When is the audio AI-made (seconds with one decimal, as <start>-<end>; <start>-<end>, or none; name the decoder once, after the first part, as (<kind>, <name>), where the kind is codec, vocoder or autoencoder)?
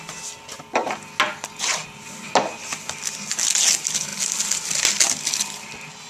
none